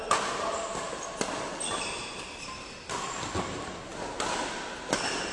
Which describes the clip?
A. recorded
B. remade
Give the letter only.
A